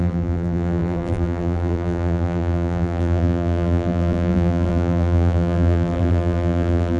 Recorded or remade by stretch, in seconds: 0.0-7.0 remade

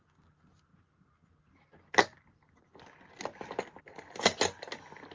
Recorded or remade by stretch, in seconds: 0.0-5.1 recorded

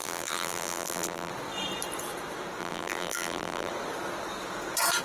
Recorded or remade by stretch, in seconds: 0.0-1.3 remade; 1.3-2.6 recorded; 2.6-3.7 remade; 3.7-5.0 recorded

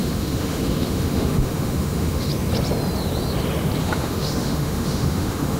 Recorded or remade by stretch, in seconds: 0.0-2.3 remade; 2.3-3.8 recorded; 3.8-5.6 remade